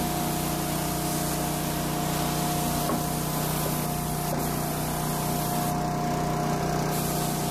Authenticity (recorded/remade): recorded